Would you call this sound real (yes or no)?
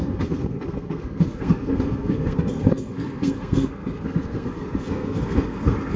no